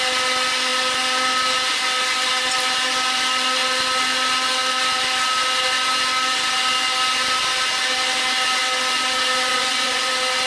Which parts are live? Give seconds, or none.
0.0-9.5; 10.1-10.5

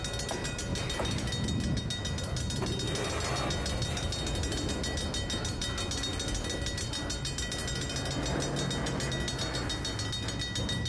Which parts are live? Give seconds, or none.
0.0-10.9